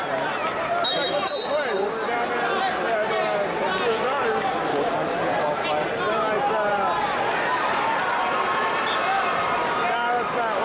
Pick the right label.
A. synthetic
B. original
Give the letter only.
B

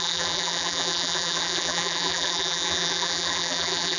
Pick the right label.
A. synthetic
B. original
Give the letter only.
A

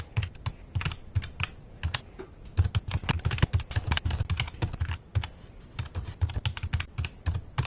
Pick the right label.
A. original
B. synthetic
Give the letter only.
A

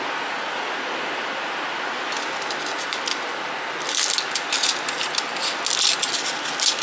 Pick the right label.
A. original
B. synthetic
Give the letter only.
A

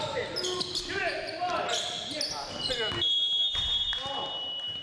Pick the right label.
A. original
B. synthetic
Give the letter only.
A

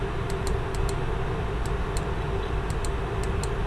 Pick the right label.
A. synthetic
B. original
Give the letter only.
B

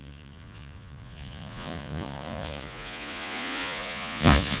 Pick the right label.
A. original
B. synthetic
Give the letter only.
B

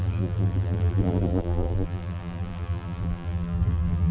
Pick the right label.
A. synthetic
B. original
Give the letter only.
A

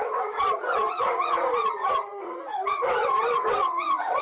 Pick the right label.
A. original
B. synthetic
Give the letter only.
B